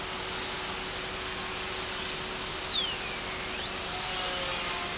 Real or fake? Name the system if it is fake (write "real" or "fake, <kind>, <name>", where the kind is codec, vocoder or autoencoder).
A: real